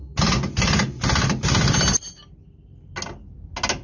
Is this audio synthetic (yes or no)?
no